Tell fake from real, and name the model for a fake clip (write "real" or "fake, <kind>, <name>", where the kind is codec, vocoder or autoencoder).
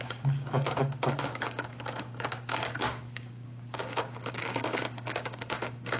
fake, codec, DAC